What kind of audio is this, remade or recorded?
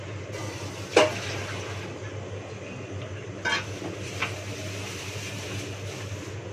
recorded